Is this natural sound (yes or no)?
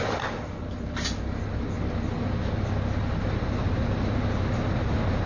yes